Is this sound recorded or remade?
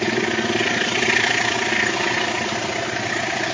recorded